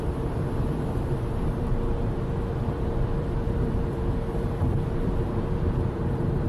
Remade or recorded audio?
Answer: remade